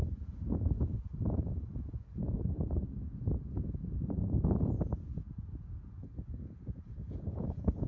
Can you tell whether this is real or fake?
fake